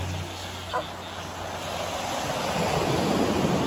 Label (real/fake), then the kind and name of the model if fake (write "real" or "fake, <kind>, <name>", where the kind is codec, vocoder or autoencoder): real